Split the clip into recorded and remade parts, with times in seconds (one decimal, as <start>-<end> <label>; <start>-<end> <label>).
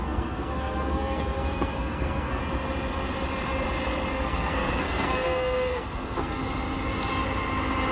0.0-2.4 remade; 2.4-4.1 recorded; 4.1-6.4 remade; 6.4-7.9 recorded